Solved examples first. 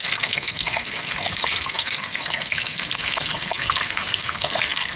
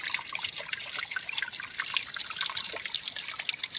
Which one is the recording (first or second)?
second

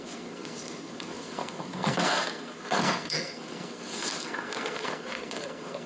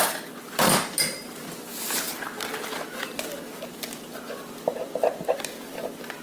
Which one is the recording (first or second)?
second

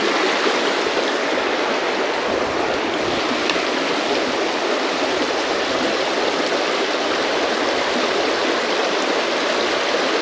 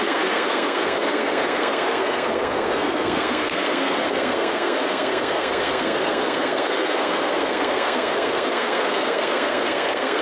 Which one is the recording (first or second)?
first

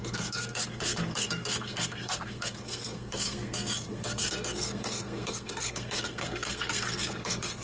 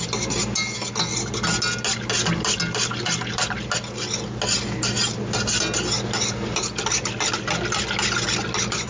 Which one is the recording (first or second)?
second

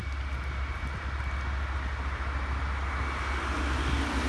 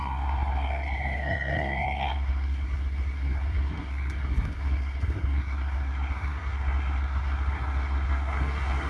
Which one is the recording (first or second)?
first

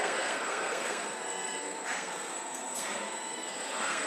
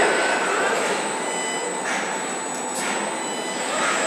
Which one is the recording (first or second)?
second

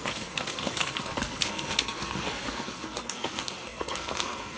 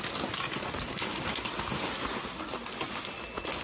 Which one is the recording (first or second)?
second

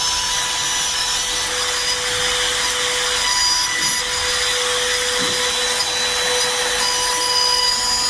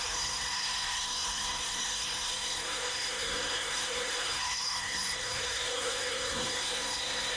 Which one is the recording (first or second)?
first